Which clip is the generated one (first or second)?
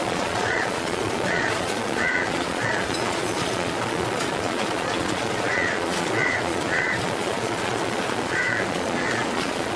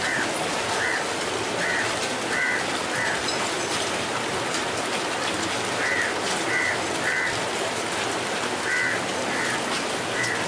first